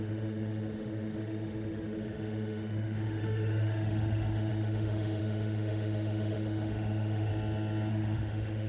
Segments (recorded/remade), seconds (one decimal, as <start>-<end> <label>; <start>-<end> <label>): 0.0-7.3 remade; 7.3-7.9 recorded; 7.9-8.7 remade